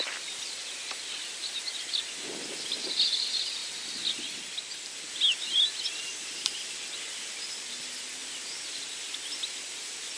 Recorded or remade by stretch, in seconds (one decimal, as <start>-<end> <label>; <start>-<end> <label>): 0.0-10.2 recorded